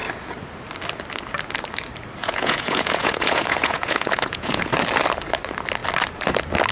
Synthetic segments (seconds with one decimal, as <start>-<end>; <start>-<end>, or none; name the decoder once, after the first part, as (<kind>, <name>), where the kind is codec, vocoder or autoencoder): 2.2-4.7 (vocoder, Vocos)